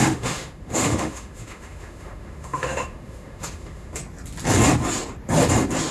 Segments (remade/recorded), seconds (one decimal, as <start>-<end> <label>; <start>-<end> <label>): 0.0-4.0 remade; 4.0-5.9 recorded